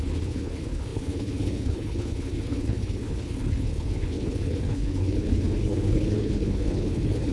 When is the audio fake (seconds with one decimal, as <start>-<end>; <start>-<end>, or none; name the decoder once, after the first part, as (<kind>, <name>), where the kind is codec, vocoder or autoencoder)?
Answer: 0.0-7.3 (codec, HILCodec)